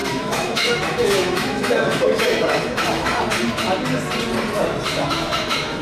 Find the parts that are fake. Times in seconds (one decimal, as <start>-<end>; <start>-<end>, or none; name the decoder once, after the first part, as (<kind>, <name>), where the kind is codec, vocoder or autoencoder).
0.0-3.2 (autoencoder, DAC-VAE); 4.9-5.8